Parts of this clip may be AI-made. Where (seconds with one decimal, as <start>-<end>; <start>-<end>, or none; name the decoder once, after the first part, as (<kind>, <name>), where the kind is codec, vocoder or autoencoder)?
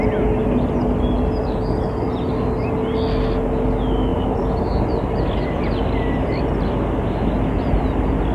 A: 4.1-6.4 (vocoder, BigVGAN v2)